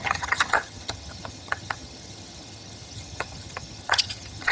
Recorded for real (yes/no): no